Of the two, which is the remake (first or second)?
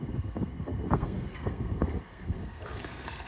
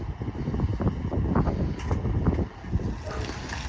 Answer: first